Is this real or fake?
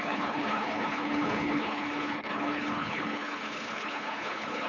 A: fake